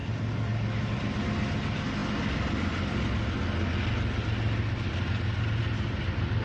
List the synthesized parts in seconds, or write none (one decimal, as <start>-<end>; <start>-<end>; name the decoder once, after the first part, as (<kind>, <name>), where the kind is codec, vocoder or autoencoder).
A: 0.0-1.2 (vocoder, BigVGAN v2)